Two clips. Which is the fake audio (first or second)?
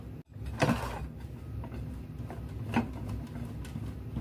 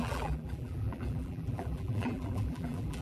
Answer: second